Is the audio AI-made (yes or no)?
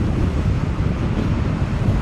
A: no